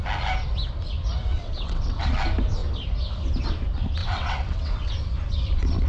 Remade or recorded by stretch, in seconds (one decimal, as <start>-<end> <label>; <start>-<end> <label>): 0.0-1.3 recorded; 1.3-2.1 remade; 2.1-4.0 recorded; 4.0-4.9 remade; 4.9-5.9 recorded